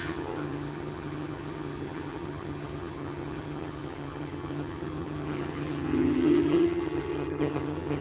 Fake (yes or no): yes